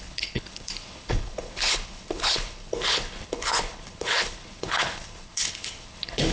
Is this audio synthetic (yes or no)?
yes